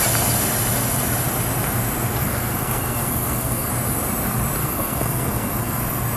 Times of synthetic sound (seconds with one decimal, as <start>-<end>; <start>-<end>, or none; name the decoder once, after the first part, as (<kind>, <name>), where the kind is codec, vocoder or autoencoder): 2.2-3.7 (codec, SNAC); 4.6-5.8